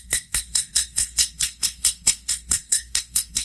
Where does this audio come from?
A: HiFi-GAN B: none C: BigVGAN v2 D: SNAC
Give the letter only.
D